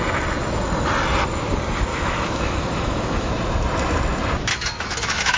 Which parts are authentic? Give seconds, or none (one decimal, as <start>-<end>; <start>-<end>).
0.0-1.9; 3.3-4.5